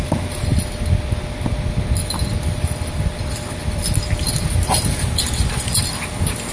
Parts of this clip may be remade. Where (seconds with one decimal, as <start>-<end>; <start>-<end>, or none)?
none